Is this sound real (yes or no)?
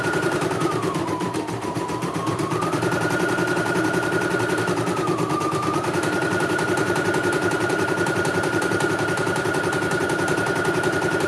no